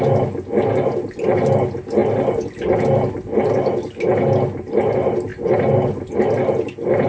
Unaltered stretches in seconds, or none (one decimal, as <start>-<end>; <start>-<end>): 0.0-7.1